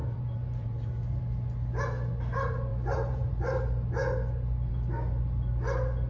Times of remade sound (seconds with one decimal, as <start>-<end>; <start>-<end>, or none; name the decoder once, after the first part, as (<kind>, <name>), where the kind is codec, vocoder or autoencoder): 0.0-1.2 (vocoder, BigVGAN v2); 2.7-3.6